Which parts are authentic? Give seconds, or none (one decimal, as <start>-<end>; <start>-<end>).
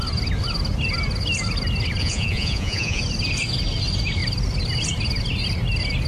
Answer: 0.0-2.0; 3.0-6.1